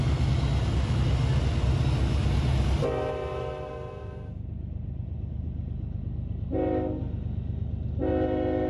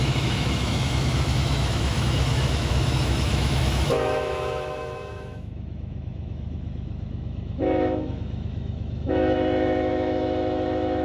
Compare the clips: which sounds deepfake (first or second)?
second